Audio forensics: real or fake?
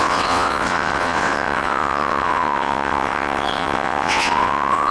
fake